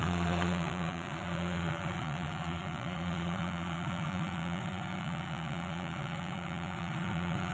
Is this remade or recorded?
remade